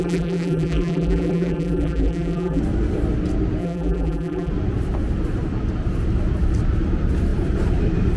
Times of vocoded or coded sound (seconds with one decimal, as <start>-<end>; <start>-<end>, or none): 0.0-2.6; 3.6-4.5

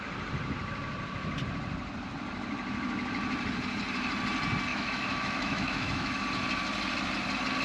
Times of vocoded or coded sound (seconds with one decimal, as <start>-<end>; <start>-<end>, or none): 4.7-6.2